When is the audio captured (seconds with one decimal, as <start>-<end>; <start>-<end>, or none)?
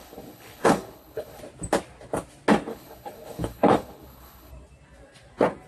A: 1.4-2.7; 4.5-5.7